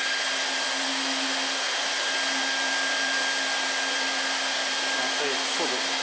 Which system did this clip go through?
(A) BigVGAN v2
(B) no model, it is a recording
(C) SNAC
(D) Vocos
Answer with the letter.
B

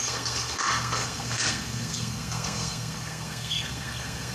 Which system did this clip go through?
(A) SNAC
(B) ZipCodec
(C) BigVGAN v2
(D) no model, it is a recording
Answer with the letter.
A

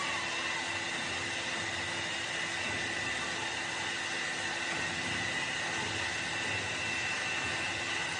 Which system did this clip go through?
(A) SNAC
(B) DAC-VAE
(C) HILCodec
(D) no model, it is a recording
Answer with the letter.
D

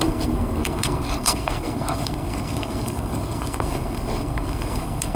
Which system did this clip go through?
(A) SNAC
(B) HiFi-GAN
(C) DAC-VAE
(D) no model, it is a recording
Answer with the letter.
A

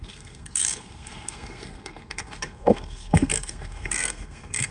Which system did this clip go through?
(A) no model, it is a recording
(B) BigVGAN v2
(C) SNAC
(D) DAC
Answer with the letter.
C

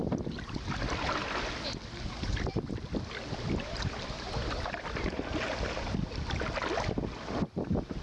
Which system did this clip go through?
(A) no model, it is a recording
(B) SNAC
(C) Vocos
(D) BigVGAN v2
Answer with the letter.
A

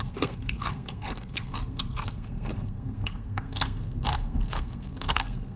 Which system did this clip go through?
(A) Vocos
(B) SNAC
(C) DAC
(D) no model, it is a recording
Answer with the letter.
B